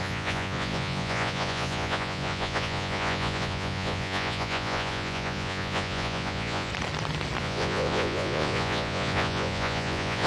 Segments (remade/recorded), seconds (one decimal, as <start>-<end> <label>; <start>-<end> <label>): 0.0-6.7 remade; 6.7-7.4 recorded; 7.4-10.3 remade